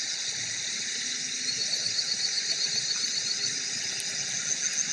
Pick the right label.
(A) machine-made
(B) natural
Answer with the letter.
B